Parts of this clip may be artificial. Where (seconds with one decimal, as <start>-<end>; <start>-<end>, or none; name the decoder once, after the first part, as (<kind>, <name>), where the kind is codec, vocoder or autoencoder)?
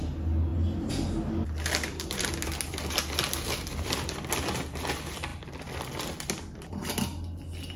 none